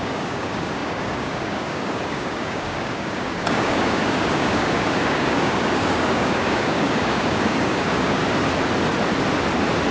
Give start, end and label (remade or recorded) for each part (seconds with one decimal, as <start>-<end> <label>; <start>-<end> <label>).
0.0-8.2 remade; 8.2-9.9 recorded